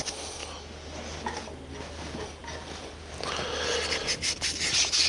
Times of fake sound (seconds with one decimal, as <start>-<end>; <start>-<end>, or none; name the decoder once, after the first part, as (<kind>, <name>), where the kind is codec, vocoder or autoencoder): none